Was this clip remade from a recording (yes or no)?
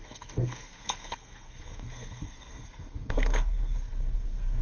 yes